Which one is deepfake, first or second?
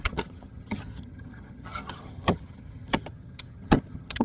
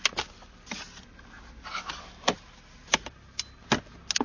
first